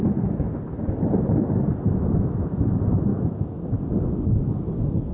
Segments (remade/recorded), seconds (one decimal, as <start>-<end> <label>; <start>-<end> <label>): 0.0-3.1 recorded; 3.1-3.8 remade; 3.8-5.1 recorded

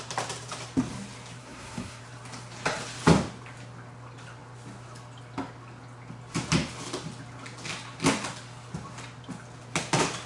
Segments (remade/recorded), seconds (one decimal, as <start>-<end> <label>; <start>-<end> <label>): 0.0-1.4 recorded; 1.4-2.0 remade; 2.0-10.3 recorded